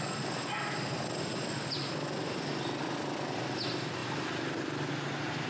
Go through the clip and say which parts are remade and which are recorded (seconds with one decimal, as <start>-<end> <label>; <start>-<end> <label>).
0.0-5.5 recorded